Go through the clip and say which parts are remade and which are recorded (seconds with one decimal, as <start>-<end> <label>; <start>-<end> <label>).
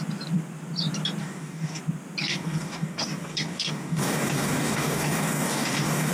0.0-1.2 recorded; 1.2-1.8 remade; 1.8-2.3 recorded; 2.3-6.1 remade